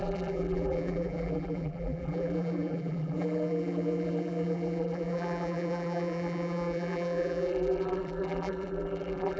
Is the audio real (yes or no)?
no